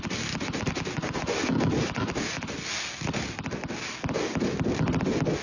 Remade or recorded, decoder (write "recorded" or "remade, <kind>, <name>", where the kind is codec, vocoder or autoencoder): recorded